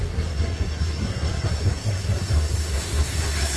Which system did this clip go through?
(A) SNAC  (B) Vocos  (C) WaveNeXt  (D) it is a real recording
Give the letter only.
A